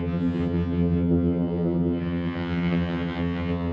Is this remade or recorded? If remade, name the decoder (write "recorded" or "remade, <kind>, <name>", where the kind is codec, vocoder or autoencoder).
remade, vocoder, HiFi-GAN